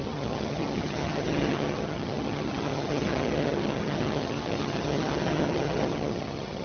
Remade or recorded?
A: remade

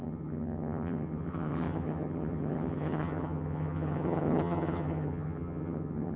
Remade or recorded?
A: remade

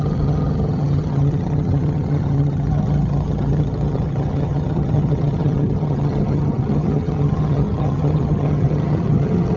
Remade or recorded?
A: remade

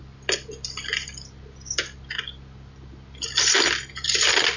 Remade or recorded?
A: recorded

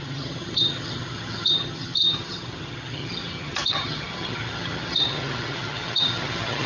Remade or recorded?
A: remade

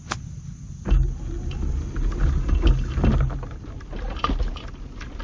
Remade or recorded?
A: recorded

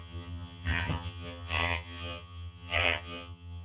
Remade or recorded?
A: remade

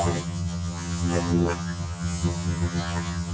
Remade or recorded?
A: remade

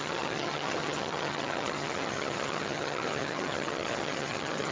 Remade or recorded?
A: remade